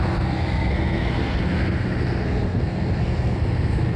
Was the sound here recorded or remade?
remade